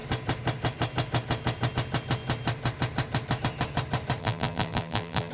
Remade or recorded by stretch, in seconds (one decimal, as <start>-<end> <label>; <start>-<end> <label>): 0.0-4.2 recorded; 4.2-5.3 remade